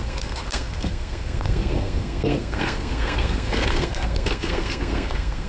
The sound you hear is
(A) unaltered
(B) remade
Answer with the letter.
B